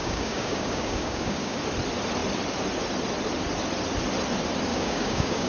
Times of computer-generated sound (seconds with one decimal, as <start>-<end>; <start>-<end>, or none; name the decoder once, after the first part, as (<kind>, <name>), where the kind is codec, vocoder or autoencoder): 0.0-1.6 (codec, DAC); 4.7-5.5